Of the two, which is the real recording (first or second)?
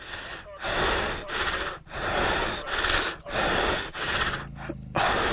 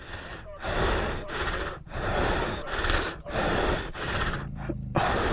first